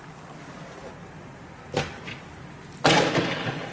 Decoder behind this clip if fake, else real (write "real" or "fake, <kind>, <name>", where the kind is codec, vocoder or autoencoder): real